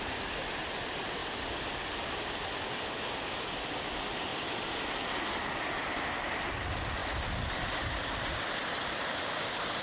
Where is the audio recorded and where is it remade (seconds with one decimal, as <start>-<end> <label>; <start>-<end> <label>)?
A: 0.0-9.8 recorded